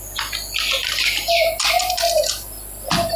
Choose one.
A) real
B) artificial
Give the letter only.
A